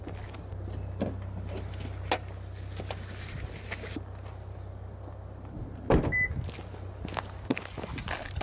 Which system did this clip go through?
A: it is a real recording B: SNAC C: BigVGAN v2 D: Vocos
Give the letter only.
A